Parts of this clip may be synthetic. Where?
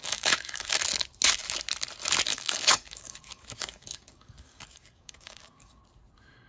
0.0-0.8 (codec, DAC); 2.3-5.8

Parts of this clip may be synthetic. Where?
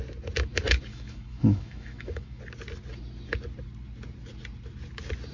0.9-2.4 (autoencoder, DAC-VAE)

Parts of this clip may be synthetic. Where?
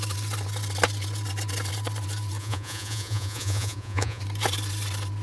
2.4-4.2 (vocoder, Vocos)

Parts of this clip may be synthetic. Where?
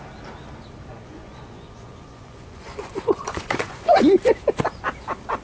0.9-4.0 (vocoder, Vocos)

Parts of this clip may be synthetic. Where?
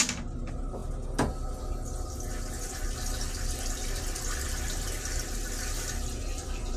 none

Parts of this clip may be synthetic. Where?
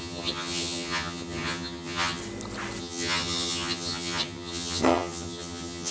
0.0-2.2 (vocoder, HiFi-GAN); 2.8-5.9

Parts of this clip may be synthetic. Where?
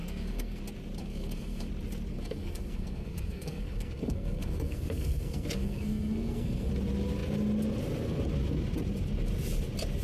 0.0-0.6 (codec, SNAC); 1.0-1.7; 2.1-6.7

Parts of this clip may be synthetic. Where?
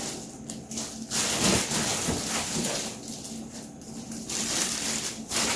1.9-5.6 (vocoder, BigVGAN v2)